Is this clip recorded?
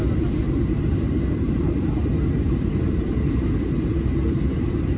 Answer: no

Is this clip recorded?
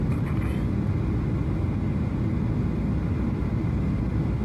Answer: yes